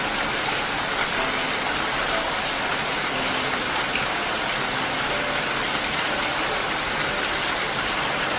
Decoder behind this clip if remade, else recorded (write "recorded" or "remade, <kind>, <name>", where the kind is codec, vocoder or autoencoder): recorded